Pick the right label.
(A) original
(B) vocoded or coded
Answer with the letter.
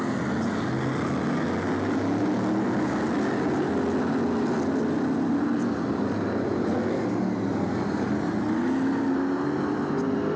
A